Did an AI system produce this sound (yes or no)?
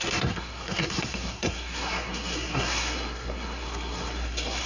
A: yes